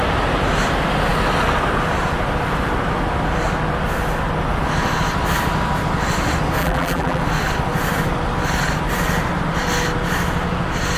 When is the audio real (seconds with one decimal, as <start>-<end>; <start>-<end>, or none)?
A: 0.0-6.6; 7.2-11.0